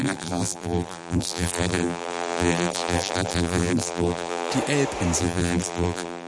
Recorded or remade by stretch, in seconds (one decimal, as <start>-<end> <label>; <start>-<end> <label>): 0.0-4.5 remade; 4.5-5.2 recorded; 5.2-6.3 remade